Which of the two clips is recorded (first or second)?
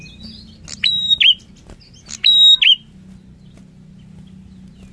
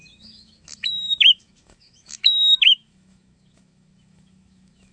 first